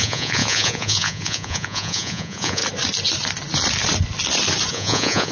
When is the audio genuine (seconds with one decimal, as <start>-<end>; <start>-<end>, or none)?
2.6-4.7